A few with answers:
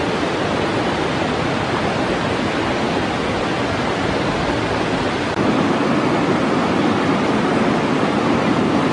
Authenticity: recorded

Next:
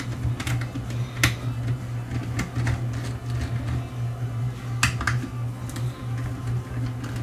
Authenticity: recorded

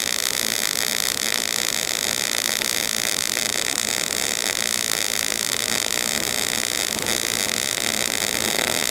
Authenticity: recorded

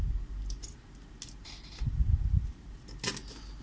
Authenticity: recorded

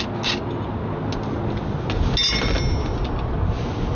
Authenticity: recorded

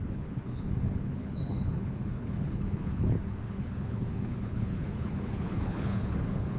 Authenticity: remade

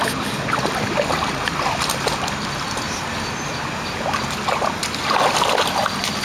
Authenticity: recorded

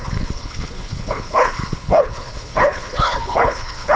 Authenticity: remade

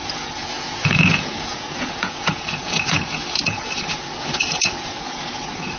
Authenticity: remade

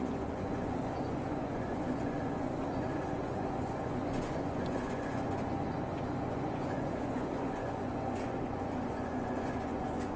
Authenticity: remade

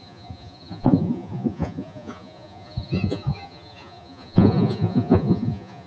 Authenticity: remade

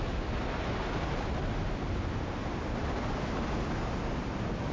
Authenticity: recorded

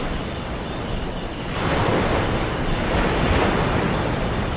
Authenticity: recorded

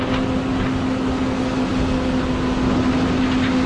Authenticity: recorded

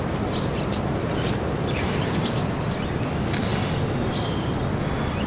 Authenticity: recorded